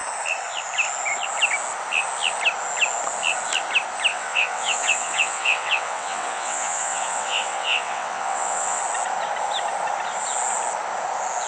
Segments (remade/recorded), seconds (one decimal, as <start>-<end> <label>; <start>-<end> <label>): 0.0-4.1 recorded; 4.1-8.8 remade; 8.8-11.5 recorded